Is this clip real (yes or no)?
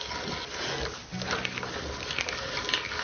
yes